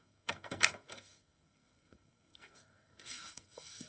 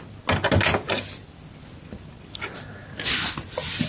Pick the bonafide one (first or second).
second